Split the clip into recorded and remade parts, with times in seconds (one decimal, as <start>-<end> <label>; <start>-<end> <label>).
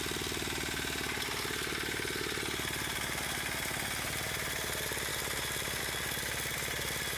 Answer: 0.0-7.2 recorded